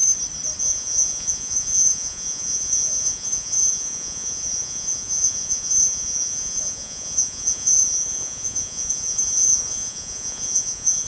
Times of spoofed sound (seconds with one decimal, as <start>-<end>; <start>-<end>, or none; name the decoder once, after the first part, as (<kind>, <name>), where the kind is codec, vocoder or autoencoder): 0.6-11.1 (vocoder, Vocos)